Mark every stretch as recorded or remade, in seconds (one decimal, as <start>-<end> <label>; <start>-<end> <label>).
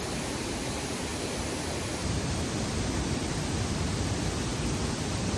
0.0-1.1 recorded; 1.1-3.2 remade; 3.2-4.5 recorded; 4.5-5.4 remade